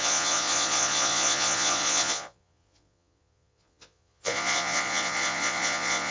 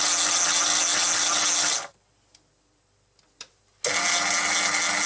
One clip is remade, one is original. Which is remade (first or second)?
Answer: first